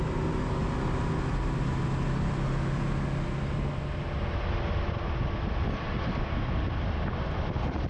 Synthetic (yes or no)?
no